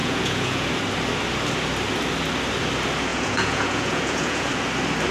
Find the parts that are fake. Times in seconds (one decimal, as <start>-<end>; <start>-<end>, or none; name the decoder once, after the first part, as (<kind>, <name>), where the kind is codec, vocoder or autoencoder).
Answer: 0.0-0.7 (vocoder, Vocos); 3.1-4.5